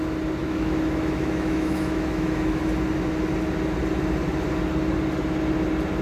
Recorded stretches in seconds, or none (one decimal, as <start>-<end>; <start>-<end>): 0.0-0.4; 2.6-6.0

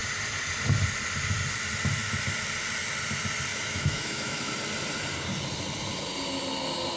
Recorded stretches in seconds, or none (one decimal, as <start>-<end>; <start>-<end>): 0.0-3.5; 4.5-7.0

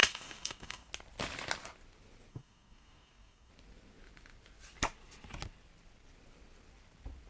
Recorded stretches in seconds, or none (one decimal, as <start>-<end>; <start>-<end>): 0.9-2.3; 3.5-7.3

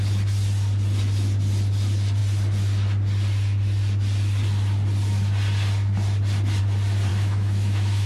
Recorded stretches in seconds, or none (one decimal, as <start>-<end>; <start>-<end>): 0.0-7.1

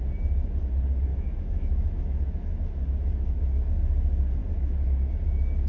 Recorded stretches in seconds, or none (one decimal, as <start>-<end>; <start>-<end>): 0.0-1.1; 3.7-4.4; 5.1-5.7